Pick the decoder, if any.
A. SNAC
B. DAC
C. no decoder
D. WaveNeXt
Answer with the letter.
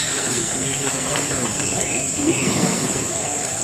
A